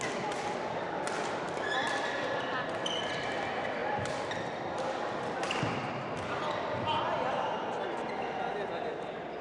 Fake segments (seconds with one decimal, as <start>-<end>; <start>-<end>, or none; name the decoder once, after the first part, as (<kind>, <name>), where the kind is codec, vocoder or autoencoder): none